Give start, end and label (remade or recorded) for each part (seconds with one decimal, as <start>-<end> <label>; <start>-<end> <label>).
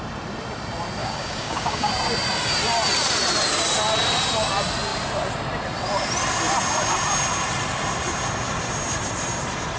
0.0-1.0 recorded; 1.0-1.9 remade; 1.9-9.8 recorded